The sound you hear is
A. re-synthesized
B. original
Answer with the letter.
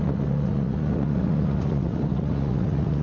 A